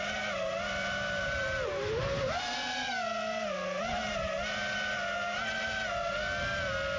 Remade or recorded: recorded